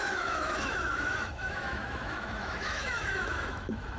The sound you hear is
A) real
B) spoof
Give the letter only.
B